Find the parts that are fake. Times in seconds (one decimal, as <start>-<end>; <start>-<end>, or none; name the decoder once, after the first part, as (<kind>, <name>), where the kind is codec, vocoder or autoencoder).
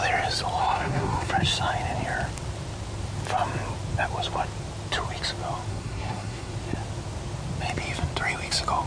0.6-1.3 (codec, SNAC); 5.7-6.5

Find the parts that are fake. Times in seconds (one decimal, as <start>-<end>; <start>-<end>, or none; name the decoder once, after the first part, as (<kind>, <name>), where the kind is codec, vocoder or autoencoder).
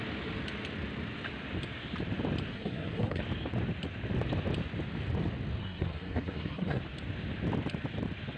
2.5-3.2 (codec, SNAC); 5.6-6.8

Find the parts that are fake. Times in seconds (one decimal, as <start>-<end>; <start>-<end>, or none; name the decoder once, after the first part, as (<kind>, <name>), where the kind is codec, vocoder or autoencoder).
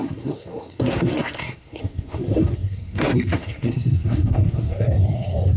0.0-5.6 (codec, SNAC)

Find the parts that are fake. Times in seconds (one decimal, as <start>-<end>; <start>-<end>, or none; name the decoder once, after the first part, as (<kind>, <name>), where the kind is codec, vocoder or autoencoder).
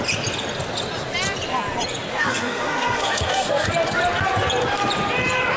2.2-3.7 (codec, SNAC)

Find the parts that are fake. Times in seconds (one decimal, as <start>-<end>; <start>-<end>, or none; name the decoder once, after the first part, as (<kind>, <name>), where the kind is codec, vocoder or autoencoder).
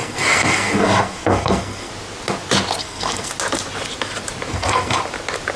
0.0-1.9 (codec, SNAC); 2.8-3.3; 4.5-5.0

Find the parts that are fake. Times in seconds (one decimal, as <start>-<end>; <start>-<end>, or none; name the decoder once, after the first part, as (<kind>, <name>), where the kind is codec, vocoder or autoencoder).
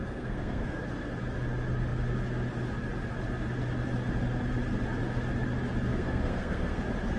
0.0-0.8 (codec, SNAC); 5.9-6.8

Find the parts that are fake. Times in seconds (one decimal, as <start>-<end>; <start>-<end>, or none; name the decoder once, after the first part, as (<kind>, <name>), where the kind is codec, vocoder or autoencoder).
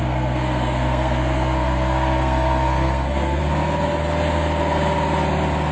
0.0-3.4 (codec, SNAC)